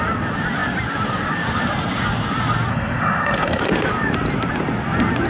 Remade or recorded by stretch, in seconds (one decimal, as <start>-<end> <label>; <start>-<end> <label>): 0.0-2.7 recorded; 2.7-3.6 remade; 3.6-5.3 recorded